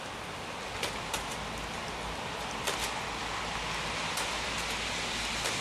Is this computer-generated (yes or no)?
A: no